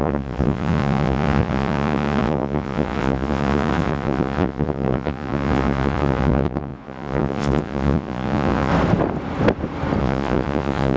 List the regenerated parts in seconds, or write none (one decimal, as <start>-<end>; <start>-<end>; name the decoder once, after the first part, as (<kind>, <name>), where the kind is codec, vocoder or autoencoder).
0.0-8.7 (vocoder, Vocos); 10.0-11.0